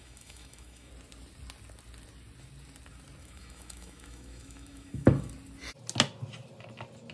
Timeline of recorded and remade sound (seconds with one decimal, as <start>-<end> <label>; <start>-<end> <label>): 0.0-0.9 remade; 0.9-3.2 recorded; 3.2-5.3 remade; 5.3-7.1 recorded